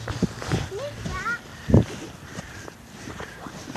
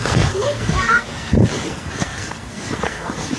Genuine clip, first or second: first